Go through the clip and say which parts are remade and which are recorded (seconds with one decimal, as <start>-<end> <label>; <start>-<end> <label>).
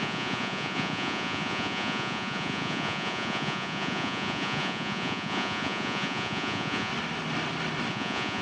0.0-6.9 remade; 6.9-7.9 recorded; 7.9-8.4 remade